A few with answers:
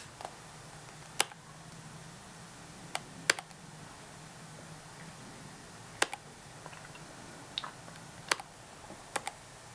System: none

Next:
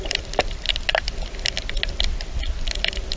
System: none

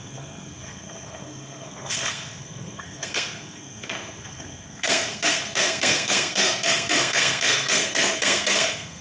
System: codec, SNAC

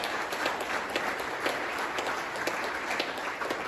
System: none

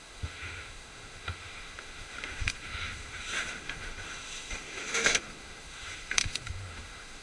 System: autoencoder, DAC-VAE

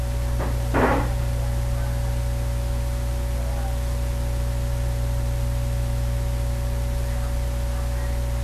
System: none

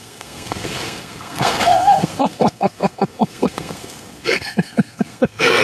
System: codec, SNAC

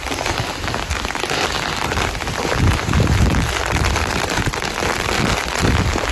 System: vocoder, BigVGAN v2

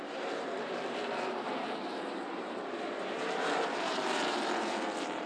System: vocoder, BigVGAN v2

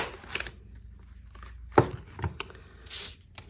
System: none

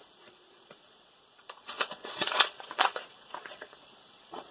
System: vocoder, Vocos